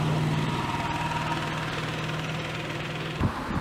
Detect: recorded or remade recorded